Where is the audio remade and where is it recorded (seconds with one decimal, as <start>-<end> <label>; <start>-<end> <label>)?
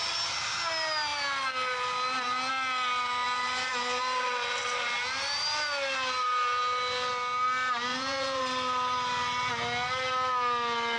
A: 0.0-7.9 recorded; 7.9-8.4 remade; 8.4-11.0 recorded